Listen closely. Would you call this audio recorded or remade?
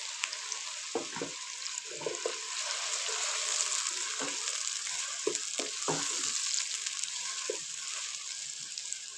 recorded